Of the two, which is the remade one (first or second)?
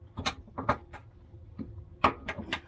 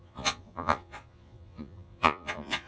second